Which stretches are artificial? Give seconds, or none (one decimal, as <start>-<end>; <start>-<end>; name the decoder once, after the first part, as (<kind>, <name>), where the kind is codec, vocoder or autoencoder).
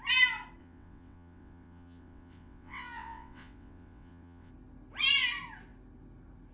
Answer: 0.6-4.5 (vocoder, WaveNeXt)